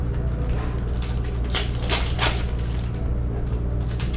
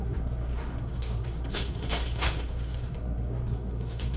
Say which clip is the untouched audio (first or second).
first